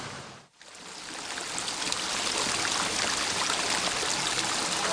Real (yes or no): yes